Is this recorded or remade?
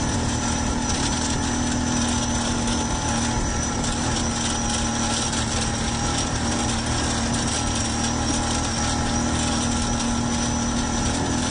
recorded